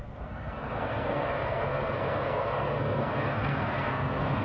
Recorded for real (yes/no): no